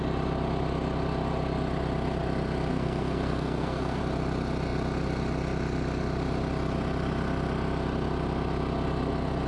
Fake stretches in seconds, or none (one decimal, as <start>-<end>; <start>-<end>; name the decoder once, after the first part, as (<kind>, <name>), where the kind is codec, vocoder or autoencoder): 2.7-4.0 (codec, SNAC)

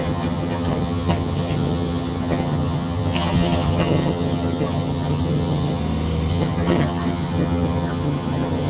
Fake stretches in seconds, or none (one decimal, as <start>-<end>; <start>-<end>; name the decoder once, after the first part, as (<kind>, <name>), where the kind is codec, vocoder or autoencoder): 0.0-5.8 (vocoder, HiFi-GAN); 6.3-8.7

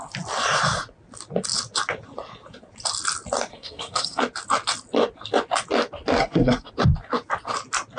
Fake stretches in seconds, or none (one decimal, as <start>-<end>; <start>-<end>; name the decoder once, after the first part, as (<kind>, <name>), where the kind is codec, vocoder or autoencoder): 3.5-4.2 (codec, SNAC); 6.2-6.7

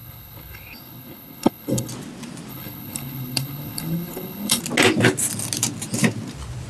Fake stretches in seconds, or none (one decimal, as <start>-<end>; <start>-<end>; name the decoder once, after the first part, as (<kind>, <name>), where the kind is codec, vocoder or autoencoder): 0.0-1.9 (codec, HILCodec); 2.5-4.6